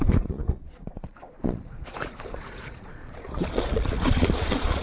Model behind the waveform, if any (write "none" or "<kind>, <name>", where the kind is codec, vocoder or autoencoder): vocoder, Vocos